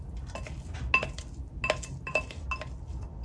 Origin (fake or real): real